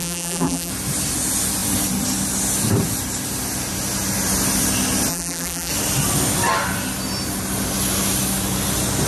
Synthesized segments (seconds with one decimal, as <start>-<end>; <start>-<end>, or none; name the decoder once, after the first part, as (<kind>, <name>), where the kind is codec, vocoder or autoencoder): 0.0-0.7 (vocoder, BigVGAN v2); 5.1-5.7